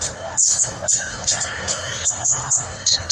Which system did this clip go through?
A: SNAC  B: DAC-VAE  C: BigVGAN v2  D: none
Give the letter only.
A